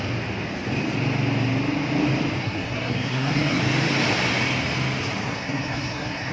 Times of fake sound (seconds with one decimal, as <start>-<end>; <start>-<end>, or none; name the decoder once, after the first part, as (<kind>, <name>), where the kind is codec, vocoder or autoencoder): 2.4-3.6 (codec, SNAC); 5.2-6.3